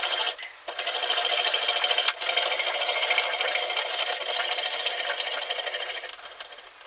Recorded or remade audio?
remade